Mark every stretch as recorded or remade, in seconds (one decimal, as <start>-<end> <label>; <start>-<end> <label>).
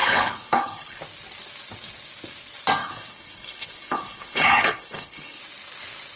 0.0-1.0 remade; 1.0-2.8 recorded; 2.8-5.4 remade; 5.4-6.2 recorded